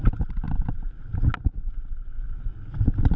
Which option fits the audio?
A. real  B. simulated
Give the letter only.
A